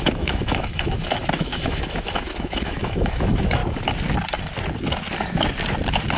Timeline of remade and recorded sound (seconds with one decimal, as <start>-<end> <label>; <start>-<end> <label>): 0.0-3.6 remade; 3.6-6.2 recorded